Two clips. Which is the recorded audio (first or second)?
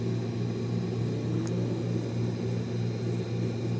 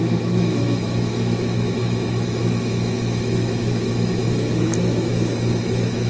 first